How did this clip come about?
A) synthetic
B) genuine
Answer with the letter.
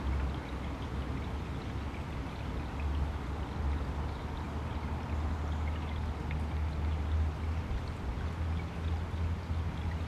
B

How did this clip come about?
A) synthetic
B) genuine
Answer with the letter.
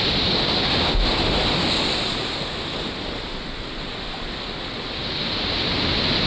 B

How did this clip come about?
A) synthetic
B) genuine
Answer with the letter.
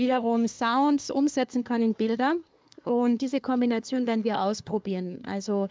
A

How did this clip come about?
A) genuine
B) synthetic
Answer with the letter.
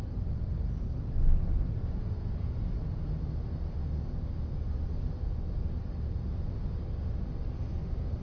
A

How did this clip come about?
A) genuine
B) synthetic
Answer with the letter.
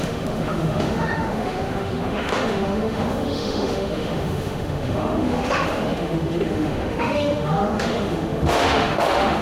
B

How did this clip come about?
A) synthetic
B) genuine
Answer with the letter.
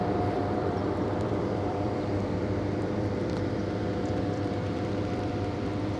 A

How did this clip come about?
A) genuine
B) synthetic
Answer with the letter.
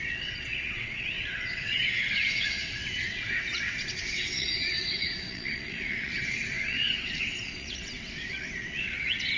B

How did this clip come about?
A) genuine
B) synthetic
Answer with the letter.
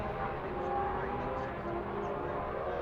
A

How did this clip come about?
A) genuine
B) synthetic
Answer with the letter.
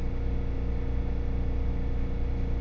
A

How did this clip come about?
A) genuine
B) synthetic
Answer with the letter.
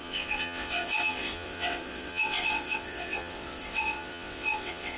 B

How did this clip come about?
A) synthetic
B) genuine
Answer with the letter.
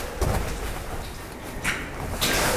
B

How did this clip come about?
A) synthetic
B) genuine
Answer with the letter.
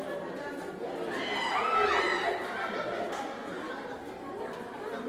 B